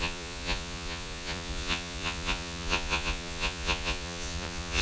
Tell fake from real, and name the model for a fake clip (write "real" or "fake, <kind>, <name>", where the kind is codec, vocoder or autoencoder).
fake, vocoder, Vocos